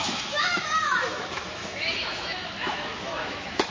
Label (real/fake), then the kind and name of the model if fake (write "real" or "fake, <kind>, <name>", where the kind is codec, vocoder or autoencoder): fake, autoencoder, DAC-VAE